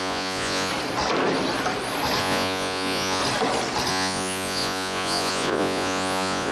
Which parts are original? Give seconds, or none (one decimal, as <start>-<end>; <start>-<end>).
0.7-2.2; 3.2-3.9